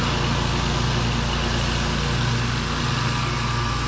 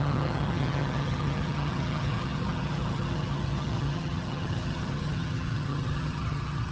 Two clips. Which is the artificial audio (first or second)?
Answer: second